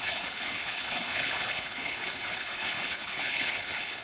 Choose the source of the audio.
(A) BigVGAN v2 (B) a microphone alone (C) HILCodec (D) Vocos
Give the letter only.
C